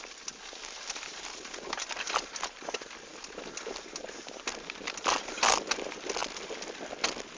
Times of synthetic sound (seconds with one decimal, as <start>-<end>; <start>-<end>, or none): none